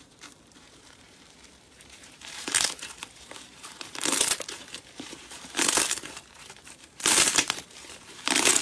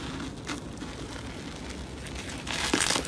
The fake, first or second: first